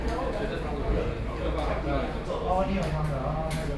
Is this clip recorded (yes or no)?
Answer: yes